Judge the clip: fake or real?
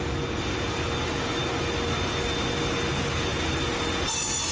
real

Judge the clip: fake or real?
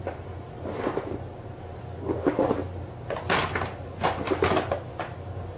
real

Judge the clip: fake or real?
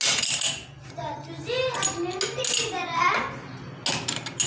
real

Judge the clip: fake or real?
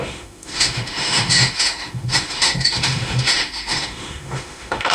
fake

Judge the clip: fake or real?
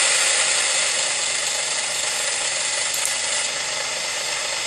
real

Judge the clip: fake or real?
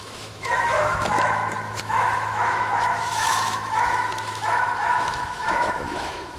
fake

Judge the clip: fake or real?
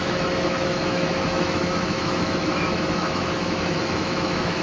fake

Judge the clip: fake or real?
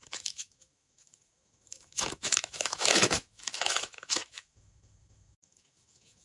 fake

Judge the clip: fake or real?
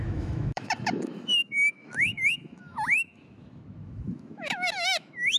fake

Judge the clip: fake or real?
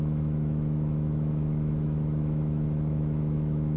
fake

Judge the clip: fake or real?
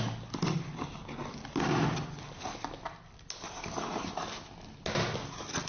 real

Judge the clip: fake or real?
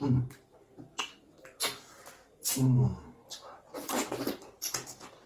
real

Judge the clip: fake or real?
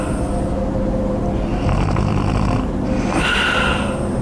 real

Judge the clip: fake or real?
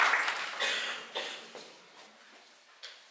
real